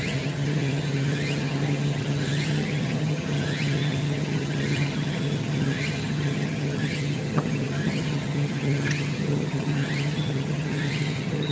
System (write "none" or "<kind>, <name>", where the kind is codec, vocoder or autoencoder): vocoder, HiFi-GAN